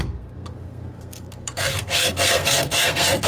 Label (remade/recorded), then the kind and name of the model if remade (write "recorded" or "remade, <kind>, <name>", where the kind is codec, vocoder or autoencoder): remade, codec, SNAC